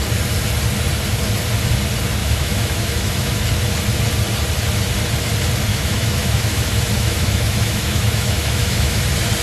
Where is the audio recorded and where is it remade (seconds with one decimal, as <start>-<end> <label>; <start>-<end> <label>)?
0.0-2.2 recorded; 2.2-3.4 remade; 3.4-5.7 recorded; 5.7-9.0 remade; 9.0-9.4 recorded